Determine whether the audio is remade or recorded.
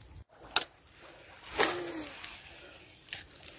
recorded